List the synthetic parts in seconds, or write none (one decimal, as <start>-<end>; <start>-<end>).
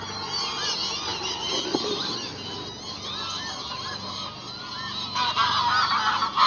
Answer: none